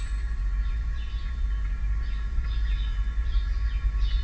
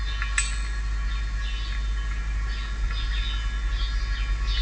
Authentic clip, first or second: second